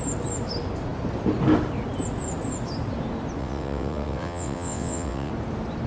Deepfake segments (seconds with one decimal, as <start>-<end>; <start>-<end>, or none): 3.4-5.3